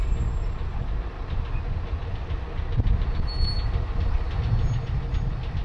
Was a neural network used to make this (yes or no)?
no